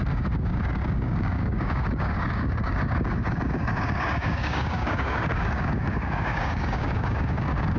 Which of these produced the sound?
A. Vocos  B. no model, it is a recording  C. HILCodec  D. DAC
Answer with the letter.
D